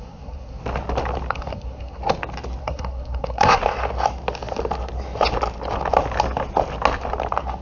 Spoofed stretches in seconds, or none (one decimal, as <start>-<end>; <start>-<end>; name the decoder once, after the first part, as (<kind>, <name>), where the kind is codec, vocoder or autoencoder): 0.0-0.6 (codec, SNAC); 1.3-2.0; 2.6-3.6